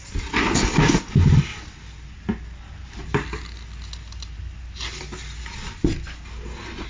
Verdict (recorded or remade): recorded